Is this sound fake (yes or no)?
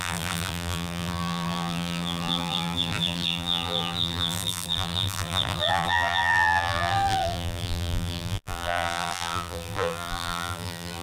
yes